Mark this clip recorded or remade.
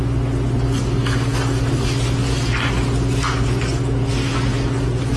recorded